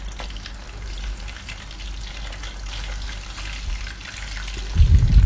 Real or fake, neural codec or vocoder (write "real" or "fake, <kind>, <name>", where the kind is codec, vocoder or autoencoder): real